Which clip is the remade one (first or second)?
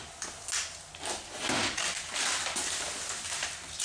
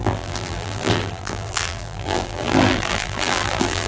second